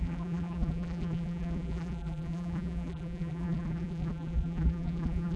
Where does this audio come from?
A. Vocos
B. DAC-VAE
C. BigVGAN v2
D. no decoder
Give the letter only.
C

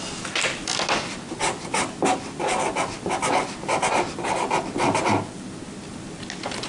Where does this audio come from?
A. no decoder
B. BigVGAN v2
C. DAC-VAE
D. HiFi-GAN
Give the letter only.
A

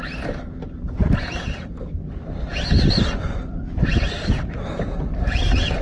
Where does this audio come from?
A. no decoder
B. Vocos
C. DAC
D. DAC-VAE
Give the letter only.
A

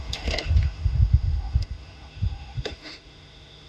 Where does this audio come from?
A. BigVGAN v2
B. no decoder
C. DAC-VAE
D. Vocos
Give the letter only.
C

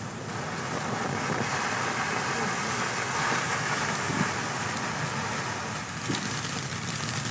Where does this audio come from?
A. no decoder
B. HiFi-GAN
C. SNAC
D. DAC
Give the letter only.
A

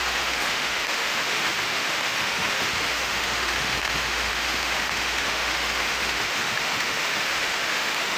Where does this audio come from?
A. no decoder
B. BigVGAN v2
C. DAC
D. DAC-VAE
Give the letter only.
D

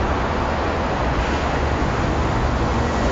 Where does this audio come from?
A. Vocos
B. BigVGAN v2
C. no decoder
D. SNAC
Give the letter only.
A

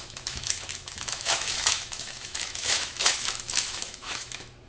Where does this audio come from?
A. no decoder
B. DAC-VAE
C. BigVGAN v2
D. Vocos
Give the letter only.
B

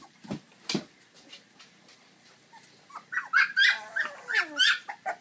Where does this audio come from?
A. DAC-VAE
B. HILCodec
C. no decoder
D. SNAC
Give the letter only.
C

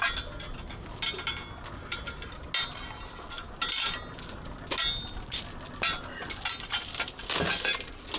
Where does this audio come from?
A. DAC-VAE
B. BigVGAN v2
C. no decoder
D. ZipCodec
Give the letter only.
C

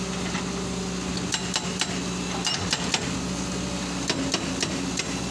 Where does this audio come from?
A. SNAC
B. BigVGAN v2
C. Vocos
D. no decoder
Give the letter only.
D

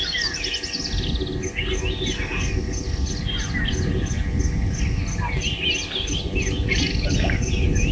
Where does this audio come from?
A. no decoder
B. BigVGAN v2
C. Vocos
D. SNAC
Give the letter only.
A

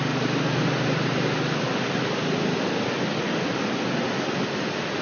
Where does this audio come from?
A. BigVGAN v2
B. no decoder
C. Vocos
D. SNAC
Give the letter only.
B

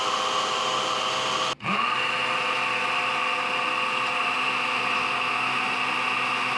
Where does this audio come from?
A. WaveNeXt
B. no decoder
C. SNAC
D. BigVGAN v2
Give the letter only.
B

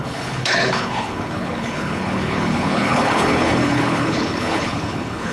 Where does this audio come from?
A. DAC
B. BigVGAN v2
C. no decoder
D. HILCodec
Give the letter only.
D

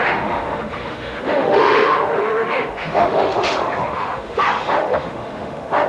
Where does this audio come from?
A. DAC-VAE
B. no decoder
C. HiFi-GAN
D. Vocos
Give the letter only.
A